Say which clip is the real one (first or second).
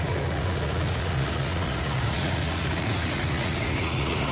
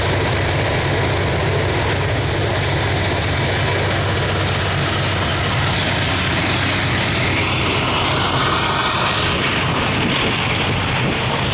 second